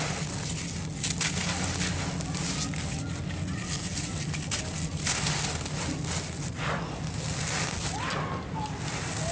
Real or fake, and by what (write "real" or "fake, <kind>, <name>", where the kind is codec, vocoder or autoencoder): real